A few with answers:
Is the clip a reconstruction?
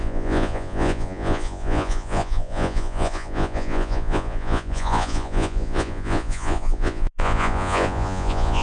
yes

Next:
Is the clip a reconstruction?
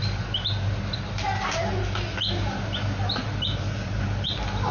no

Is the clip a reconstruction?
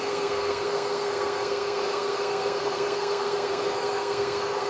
yes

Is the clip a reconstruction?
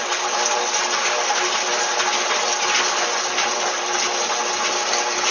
no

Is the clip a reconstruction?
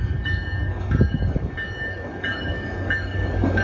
yes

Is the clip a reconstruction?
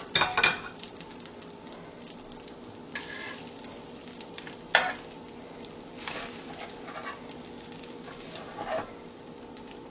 no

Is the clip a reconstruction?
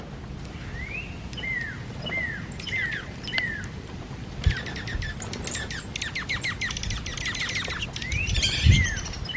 no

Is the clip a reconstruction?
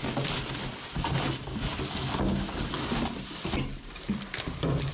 no